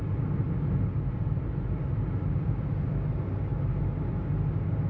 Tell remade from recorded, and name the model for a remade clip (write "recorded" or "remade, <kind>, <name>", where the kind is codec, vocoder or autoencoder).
recorded